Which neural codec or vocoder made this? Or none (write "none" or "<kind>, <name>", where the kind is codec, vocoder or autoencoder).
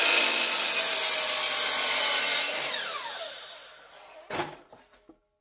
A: none